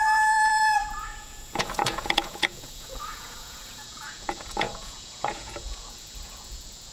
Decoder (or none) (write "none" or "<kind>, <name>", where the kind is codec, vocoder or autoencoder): vocoder, Vocos